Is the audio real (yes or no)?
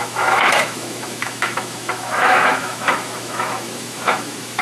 no